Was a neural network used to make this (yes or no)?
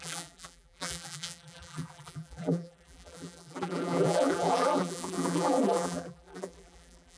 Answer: yes